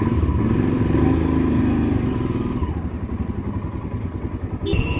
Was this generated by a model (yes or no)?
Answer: no